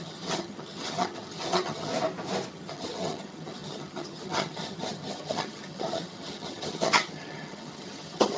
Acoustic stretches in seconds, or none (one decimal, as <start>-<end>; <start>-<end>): 1.9-2.5